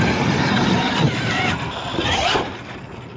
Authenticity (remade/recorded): recorded